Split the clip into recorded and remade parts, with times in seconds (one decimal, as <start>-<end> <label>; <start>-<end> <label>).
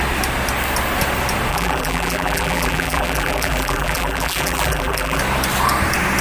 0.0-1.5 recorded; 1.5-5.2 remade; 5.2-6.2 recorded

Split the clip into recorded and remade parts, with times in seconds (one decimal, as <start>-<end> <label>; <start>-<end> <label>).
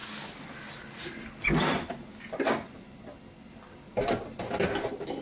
0.0-5.2 recorded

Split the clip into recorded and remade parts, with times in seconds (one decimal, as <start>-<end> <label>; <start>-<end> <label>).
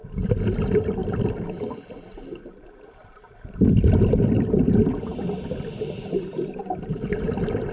0.0-1.0 recorded; 1.0-4.4 remade; 4.4-5.1 recorded; 5.1-6.6 remade; 6.6-7.7 recorded